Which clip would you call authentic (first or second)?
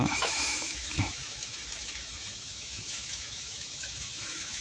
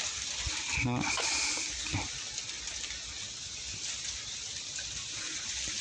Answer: second